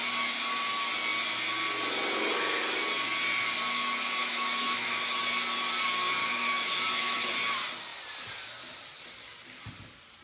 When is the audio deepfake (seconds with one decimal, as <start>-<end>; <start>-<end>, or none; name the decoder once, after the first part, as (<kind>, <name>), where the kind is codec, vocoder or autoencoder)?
4.2-5.2 (autoencoder, DAC-VAE); 6.2-7.3